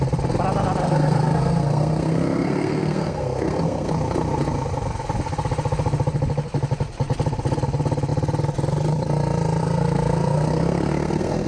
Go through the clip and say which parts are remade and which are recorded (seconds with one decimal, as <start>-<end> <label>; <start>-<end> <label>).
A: 0.0-0.8 recorded; 0.8-3.9 remade; 3.9-9.6 recorded; 9.6-11.5 remade